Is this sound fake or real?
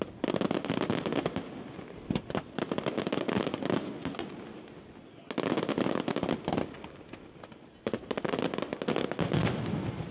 real